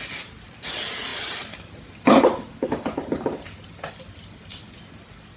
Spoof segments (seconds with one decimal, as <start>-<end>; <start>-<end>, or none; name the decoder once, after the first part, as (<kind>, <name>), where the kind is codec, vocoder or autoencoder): none